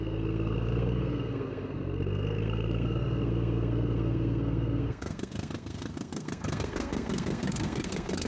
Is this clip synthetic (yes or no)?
yes